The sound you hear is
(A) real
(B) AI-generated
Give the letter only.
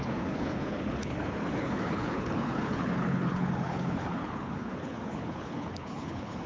B